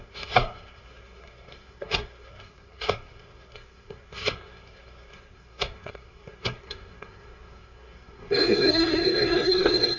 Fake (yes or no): yes